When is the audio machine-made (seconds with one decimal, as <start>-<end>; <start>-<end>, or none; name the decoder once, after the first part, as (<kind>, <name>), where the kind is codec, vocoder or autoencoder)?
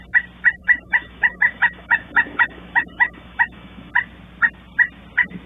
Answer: 0.6-3.9 (autoencoder, DAC-VAE)